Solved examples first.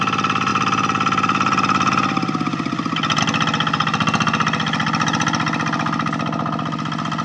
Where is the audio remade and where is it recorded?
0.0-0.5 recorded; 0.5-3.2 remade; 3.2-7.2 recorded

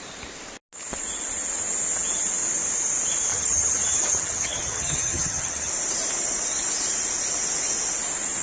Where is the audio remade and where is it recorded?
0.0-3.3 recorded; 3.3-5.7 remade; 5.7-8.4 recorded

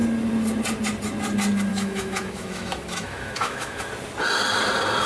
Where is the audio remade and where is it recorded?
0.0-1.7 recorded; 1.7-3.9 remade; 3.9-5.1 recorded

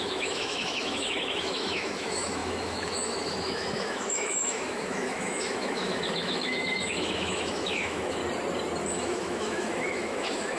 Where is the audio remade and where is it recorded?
0.0-8.2 remade; 8.2-8.9 recorded; 8.9-10.6 remade

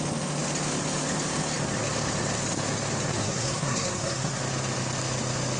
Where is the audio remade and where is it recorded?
0.0-3.1 recorded; 3.1-4.4 remade; 4.4-5.6 recorded

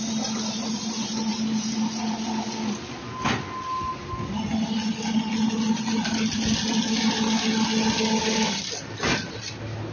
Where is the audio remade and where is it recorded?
0.0-9.9 recorded

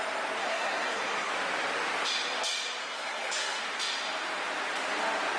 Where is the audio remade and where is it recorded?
0.0-0.4 recorded; 0.4-1.3 remade; 1.3-2.8 recorded; 2.8-3.6 remade; 3.6-5.4 recorded

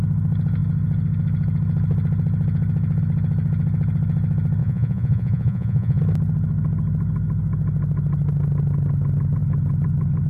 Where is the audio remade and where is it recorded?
0.0-4.6 recorded; 4.6-6.0 remade; 6.0-10.3 recorded